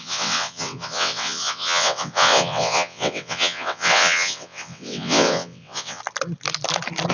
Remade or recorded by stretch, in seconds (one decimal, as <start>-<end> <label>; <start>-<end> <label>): 0.0-6.0 remade; 6.0-7.1 recorded

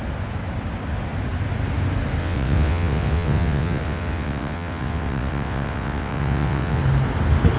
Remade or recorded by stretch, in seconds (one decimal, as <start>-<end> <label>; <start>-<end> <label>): 0.0-2.2 recorded; 2.2-6.8 remade; 6.8-7.6 recorded